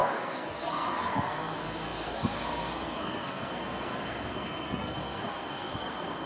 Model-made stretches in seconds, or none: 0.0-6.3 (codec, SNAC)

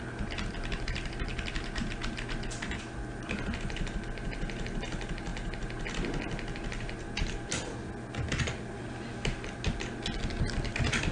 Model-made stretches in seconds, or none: none

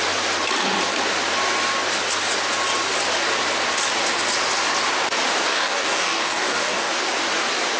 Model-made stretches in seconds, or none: 5.5-6.9 (codec, DAC)

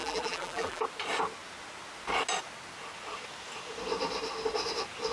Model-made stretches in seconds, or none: 0.0-0.8 (vocoder, BigVGAN v2)